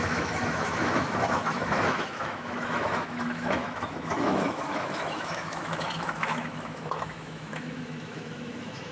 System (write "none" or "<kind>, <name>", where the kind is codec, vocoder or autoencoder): autoencoder, DAC-VAE